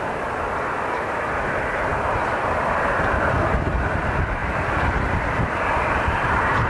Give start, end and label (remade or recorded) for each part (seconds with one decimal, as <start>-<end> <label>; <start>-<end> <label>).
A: 0.0-4.4 recorded; 4.4-6.7 remade